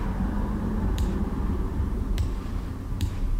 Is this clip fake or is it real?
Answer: fake